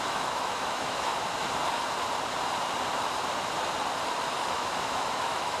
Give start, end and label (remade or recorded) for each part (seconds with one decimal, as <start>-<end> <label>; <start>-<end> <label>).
0.0-1.1 remade; 1.1-4.5 recorded; 4.5-5.6 remade